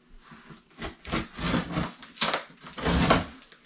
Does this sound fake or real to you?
real